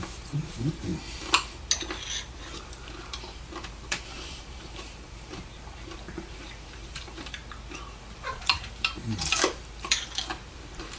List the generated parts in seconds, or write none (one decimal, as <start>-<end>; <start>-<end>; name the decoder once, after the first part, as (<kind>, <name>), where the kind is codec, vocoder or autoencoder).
0.0-0.9 (vocoder, BigVGAN v2); 2.4-7.4; 8.0-11.0